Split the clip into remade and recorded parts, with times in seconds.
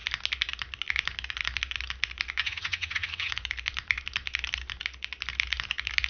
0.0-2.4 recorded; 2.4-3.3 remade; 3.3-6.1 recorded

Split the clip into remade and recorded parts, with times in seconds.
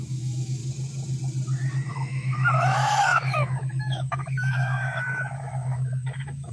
0.0-0.6 remade; 0.6-1.9 recorded; 1.9-6.5 remade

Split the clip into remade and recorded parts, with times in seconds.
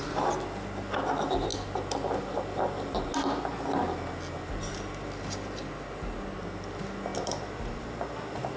0.0-7.1 recorded; 7.1-7.8 remade; 7.8-8.6 recorded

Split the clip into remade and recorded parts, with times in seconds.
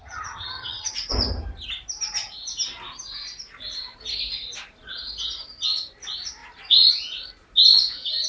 0.0-0.9 remade; 0.9-8.3 recorded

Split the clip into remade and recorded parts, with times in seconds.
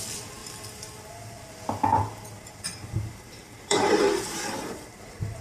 0.0-0.4 recorded; 0.4-1.0 remade; 1.0-1.9 recorded; 1.9-5.4 remade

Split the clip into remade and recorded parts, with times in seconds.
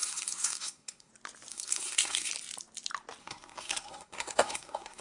0.0-1.1 remade; 1.1-1.5 recorded; 1.5-2.3 remade; 2.3-3.2 recorded; 3.2-5.0 remade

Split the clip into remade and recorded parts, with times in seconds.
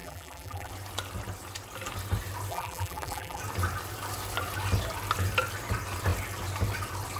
0.0-0.7 remade; 0.7-2.5 recorded; 2.5-3.4 remade; 3.4-7.2 recorded